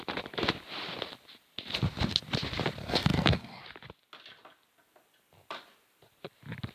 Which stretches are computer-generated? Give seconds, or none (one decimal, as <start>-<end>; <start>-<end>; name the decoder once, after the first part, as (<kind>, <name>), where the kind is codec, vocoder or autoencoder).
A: 2.8-3.6 (codec, SNAC)